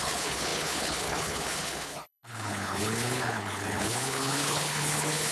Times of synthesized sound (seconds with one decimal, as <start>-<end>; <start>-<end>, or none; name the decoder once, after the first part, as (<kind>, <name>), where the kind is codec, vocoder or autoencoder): 0.0-5.3 (codec, HILCodec)